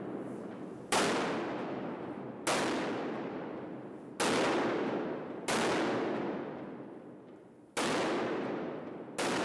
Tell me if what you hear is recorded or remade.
recorded